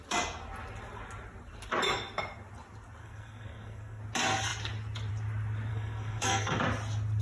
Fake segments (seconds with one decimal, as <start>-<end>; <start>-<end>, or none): 3.0-4.0; 5.7-6.6